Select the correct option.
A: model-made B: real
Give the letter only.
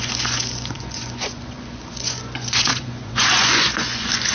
A